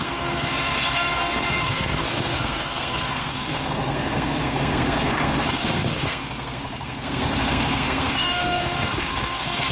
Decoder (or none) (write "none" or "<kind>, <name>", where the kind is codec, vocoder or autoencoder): codec, SNAC